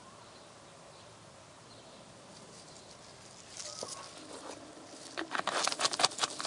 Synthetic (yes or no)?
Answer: no